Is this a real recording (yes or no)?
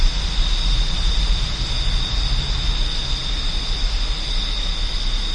yes